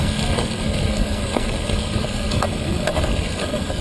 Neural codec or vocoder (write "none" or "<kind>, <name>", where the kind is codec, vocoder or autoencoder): codec, SNAC